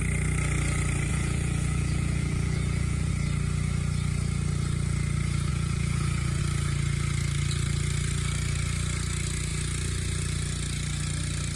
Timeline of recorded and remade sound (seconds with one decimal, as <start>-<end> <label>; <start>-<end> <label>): 0.0-1.1 recorded; 1.1-3.1 remade; 3.1-5.5 recorded; 5.5-6.4 remade; 6.4-11.6 recorded

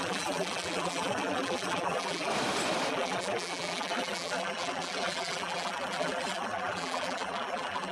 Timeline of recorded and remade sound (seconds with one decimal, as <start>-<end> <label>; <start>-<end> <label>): 0.0-2.3 remade; 2.3-2.9 recorded; 2.9-7.9 remade

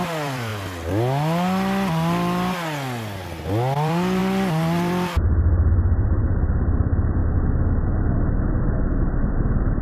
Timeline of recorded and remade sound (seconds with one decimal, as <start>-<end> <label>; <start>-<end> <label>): 0.0-0.5 remade; 0.5-3.5 recorded; 3.5-7.2 remade; 7.2-8.6 recorded; 8.6-9.8 remade

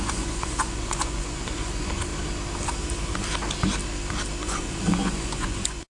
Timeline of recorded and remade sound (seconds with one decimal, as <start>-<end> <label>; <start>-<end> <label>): 0.0-2.1 remade; 2.1-4.4 recorded; 4.4-5.9 remade

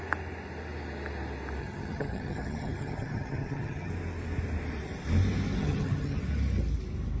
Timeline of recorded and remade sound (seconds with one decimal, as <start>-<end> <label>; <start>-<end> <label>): 0.0-1.6 recorded; 1.6-3.9 remade; 3.9-5.6 recorded; 5.6-6.2 remade; 6.2-7.2 recorded

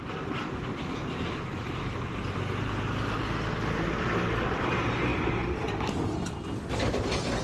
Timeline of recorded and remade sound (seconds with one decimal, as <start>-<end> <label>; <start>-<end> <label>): 0.0-1.7 remade; 1.7-7.4 recorded